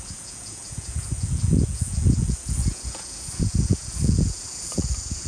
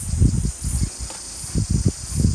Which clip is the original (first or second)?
second